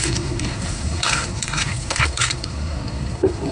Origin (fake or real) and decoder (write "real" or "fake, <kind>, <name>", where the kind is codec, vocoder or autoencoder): fake, codec, SNAC